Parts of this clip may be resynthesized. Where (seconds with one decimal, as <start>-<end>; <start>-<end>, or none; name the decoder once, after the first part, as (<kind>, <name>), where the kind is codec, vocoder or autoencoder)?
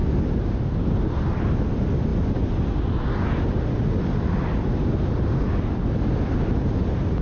none